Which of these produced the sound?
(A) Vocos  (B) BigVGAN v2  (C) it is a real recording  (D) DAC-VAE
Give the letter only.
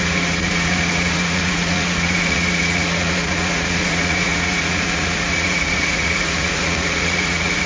A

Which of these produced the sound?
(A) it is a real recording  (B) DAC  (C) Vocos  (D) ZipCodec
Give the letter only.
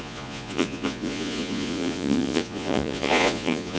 C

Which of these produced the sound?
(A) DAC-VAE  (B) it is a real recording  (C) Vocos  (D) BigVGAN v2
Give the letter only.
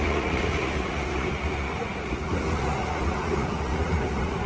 C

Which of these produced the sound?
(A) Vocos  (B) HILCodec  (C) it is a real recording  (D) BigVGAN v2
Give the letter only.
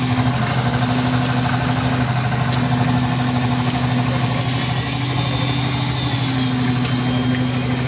C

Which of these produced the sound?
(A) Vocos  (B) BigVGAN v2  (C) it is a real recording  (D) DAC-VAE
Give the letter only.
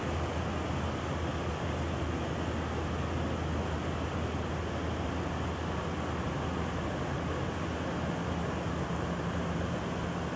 C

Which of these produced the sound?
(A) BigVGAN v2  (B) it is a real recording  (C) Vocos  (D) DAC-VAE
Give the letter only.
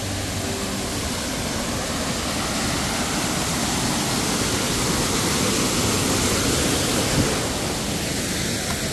B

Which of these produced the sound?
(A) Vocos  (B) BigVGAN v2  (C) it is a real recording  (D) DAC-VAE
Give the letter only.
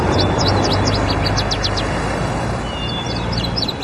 C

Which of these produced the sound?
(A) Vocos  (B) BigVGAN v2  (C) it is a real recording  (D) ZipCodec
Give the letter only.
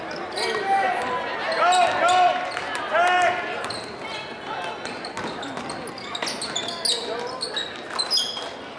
C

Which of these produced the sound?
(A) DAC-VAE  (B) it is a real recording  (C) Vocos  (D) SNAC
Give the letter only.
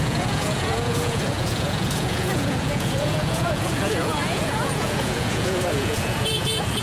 C